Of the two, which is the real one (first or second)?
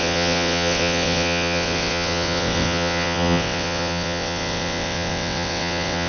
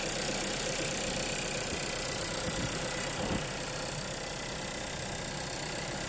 second